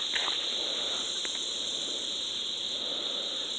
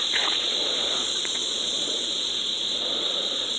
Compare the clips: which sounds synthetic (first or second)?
second